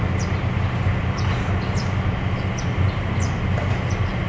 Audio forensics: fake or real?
real